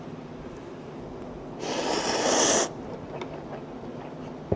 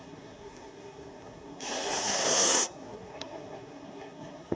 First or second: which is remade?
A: second